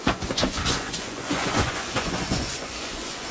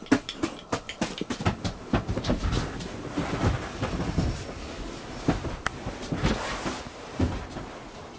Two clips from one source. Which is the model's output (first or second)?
first